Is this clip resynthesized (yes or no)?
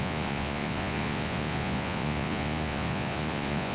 yes